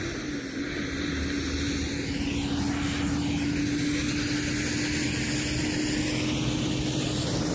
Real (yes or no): yes